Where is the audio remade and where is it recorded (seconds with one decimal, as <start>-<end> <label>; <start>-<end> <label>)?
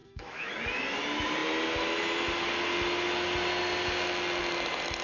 0.0-0.5 remade; 0.5-5.0 recorded